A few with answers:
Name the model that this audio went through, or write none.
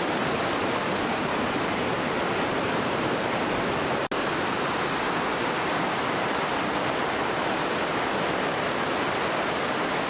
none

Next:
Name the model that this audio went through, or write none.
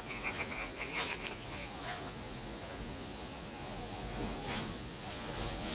vocoder, Vocos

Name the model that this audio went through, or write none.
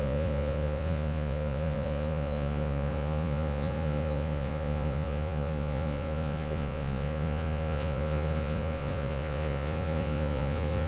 vocoder, Vocos